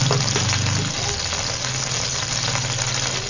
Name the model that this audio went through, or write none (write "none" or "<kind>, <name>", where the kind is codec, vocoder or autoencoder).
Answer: none